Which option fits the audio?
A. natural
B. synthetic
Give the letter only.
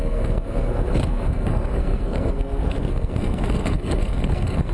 B